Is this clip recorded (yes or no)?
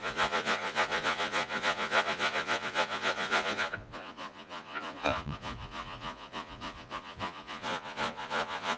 no